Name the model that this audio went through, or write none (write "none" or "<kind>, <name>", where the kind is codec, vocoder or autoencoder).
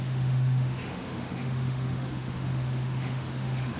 autoencoder, DAC-VAE